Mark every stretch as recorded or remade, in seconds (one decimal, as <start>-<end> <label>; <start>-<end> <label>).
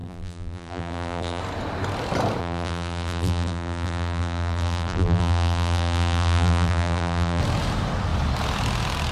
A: 0.0-1.4 remade; 1.4-2.4 recorded; 2.4-7.4 remade; 7.4-9.1 recorded